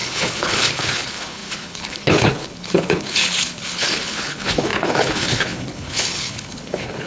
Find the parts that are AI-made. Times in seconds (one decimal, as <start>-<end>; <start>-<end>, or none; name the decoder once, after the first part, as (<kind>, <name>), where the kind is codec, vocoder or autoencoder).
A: 0.0-7.1 (codec, HILCodec)